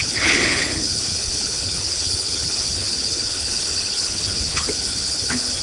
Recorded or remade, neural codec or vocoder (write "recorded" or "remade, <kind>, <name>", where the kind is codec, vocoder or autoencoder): remade, codec, HILCodec